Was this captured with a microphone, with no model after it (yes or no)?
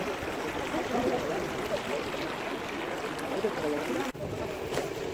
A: yes